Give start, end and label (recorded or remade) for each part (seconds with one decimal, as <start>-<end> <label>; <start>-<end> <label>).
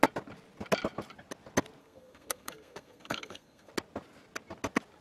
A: 0.0-1.8 recorded; 1.8-3.7 remade; 3.7-5.0 recorded